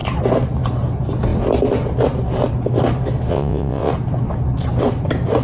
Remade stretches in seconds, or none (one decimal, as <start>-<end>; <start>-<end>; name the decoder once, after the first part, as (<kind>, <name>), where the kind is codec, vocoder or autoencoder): 3.3-3.9 (vocoder, WaveNeXt)